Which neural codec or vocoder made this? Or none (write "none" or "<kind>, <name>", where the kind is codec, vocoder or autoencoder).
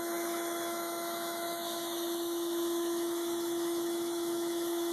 autoencoder, DAC-VAE